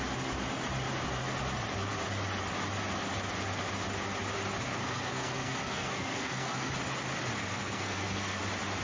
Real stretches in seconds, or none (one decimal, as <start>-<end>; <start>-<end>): 0.0-4.7; 6.7-7.4; 8.4-8.8

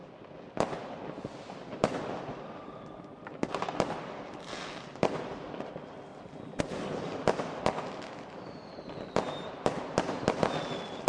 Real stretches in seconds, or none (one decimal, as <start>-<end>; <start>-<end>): 0.0-11.1

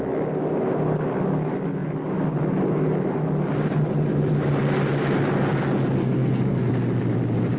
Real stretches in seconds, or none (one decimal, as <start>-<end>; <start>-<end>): 0.0-6.0; 6.7-7.6

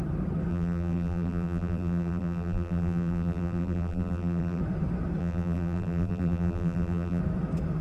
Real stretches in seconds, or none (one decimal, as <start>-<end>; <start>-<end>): 0.0-0.5; 4.6-5.2; 7.2-7.8

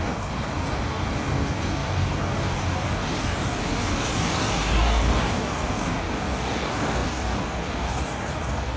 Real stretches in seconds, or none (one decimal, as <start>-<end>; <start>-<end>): none

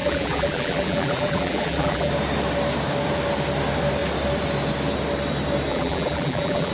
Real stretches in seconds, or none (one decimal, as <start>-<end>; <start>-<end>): 2.1-5.7

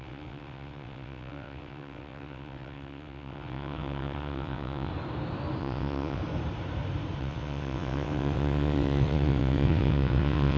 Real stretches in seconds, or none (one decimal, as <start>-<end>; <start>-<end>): 4.9-5.6; 6.2-7.2